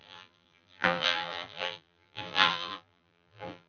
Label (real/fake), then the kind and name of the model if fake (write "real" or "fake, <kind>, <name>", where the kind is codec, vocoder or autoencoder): fake, vocoder, BigVGAN v2